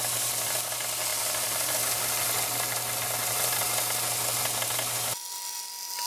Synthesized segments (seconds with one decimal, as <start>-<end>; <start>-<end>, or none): none